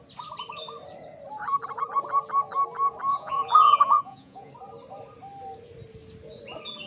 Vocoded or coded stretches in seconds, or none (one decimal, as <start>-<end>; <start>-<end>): 3.1-4.5